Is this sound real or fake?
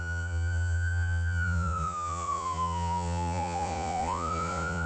fake